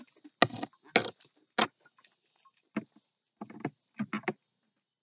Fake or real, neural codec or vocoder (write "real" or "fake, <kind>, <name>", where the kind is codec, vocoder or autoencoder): real